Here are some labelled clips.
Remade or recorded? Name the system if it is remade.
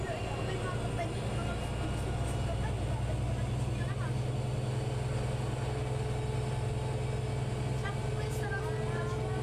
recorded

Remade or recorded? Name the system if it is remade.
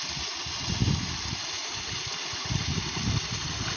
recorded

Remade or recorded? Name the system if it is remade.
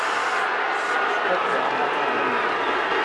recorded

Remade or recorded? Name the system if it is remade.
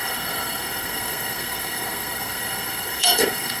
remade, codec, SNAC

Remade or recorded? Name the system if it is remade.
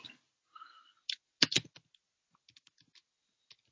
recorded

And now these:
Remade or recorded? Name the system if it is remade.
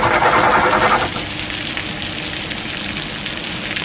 recorded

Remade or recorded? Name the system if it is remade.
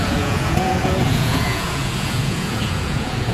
remade, vocoder, Vocos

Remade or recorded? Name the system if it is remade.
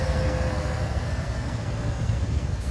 remade, codec, SNAC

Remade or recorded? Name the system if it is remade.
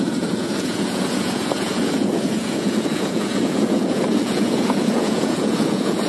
remade, vocoder, Vocos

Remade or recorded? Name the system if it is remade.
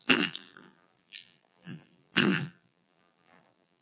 remade, vocoder, BigVGAN v2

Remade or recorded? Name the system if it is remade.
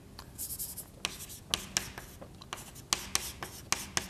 recorded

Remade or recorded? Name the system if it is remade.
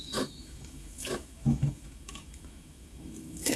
remade, autoencoder, DAC-VAE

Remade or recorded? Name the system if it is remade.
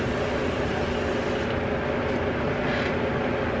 recorded